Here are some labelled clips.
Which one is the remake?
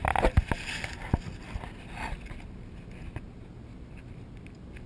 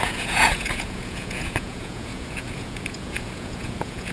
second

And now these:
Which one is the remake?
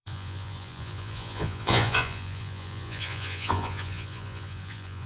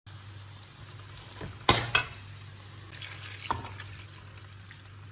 first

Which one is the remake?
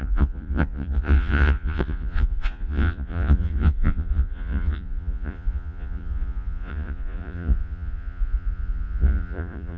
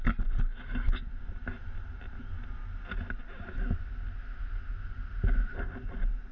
first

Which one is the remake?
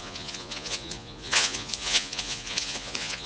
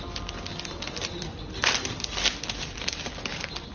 first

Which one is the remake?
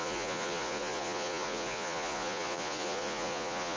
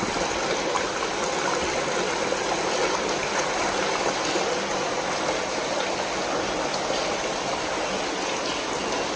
first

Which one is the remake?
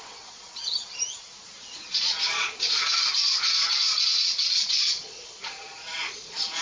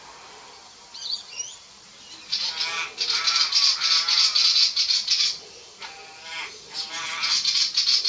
first